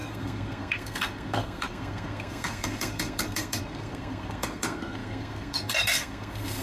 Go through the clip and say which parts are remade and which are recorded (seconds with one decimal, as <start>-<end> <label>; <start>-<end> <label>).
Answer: 0.0-6.6 remade